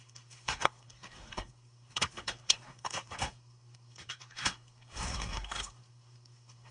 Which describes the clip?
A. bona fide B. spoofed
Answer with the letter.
B